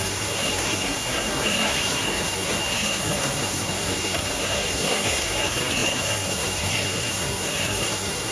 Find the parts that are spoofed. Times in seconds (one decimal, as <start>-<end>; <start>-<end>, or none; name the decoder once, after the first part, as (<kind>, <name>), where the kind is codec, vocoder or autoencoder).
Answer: 0.0-8.3 (codec, SNAC)